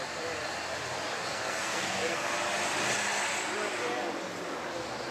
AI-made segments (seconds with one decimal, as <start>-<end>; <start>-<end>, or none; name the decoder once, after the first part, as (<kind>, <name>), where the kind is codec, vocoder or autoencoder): 1.3-2.4 (codec, SNAC)